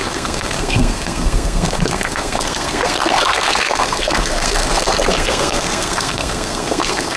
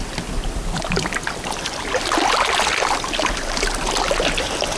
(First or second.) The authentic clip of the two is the second